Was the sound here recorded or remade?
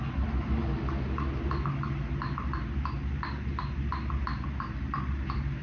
recorded